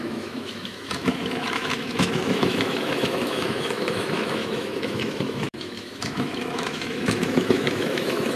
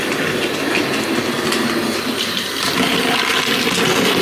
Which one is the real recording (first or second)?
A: second